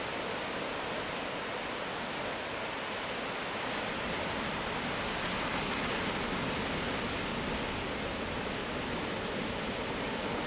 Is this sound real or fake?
real